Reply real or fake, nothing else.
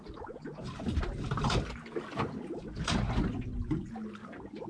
real